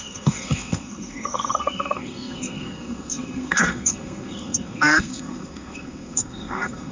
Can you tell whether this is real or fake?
fake